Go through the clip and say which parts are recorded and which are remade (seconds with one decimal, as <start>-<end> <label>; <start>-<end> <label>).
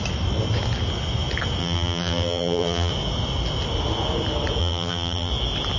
0.0-1.6 recorded; 1.6-2.9 remade; 2.9-4.6 recorded; 4.6-5.3 remade; 5.3-5.8 recorded